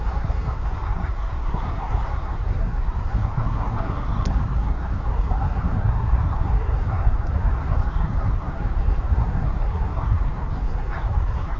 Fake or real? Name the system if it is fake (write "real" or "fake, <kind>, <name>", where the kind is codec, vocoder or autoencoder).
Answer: fake, codec, SNAC